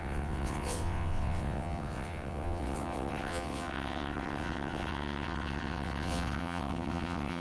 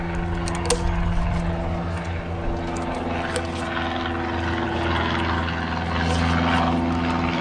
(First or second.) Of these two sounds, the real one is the second